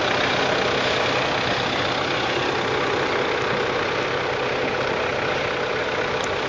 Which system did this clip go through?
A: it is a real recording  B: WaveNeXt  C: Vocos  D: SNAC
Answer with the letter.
A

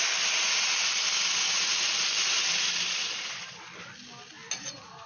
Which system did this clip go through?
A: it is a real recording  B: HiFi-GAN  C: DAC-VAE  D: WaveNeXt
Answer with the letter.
A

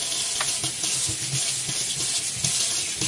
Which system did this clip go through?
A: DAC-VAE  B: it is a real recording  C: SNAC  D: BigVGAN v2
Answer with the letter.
B